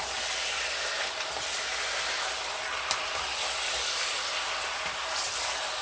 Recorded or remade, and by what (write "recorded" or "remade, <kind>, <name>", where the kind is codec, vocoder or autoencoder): remade, vocoder, BigVGAN v2